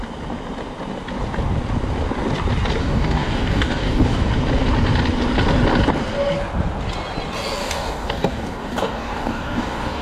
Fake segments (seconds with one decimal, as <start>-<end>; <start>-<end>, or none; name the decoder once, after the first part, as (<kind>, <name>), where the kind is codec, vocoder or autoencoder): 2.8-4.3 (codec, DAC); 7.6-10.0